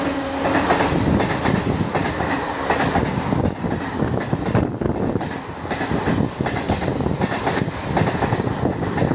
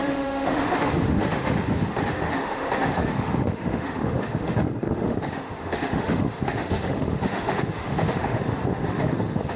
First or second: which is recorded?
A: first